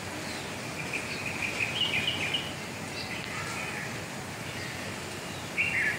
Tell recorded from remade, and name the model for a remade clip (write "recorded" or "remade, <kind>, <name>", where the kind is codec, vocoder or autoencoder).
recorded